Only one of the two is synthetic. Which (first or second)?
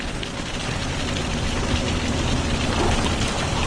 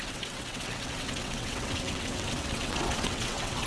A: second